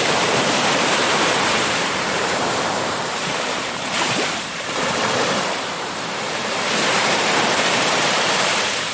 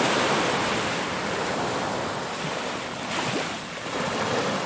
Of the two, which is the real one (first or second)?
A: second